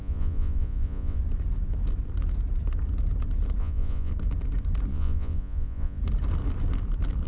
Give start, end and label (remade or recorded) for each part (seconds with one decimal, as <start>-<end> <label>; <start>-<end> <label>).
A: 0.0-1.2 remade; 1.2-3.6 recorded; 3.6-4.1 remade; 4.1-4.9 recorded; 4.9-6.0 remade; 6.0-7.3 recorded